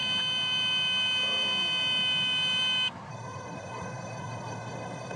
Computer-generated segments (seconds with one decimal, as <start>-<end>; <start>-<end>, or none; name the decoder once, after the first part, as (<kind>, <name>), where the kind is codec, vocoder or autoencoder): 3.1-5.2 (codec, SNAC)